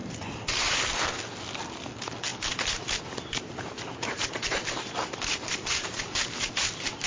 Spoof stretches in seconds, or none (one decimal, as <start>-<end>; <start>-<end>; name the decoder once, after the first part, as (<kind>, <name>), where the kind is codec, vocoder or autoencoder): 0.0-1.2 (vocoder, BigVGAN v2); 2.3-6.5